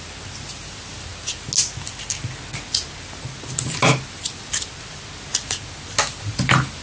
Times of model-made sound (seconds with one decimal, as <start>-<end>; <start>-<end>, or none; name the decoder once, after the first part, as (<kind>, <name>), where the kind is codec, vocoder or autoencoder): none